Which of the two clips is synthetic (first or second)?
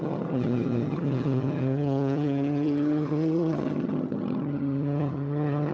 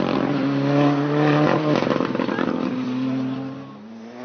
first